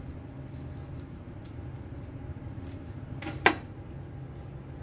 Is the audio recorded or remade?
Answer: recorded